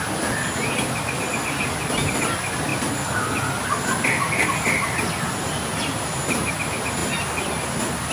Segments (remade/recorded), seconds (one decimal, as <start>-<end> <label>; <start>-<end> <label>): 0.0-8.1 recorded